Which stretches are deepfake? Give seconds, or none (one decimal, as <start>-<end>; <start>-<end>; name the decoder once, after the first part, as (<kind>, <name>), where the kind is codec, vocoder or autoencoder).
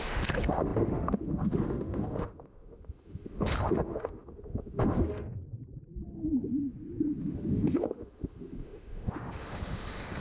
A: 0.0-5.4 (autoencoder, DAC-VAE); 7.2-10.2